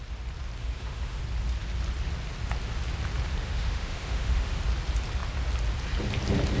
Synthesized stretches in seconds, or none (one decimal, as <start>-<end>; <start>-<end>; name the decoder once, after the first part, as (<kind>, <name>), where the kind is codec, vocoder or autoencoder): 0.6-1.2 (autoencoder, DAC-VAE); 3.4-4.6